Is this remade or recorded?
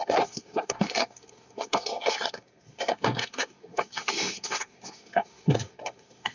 remade